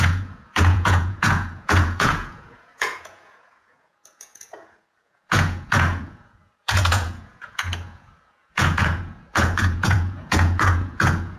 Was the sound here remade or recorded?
remade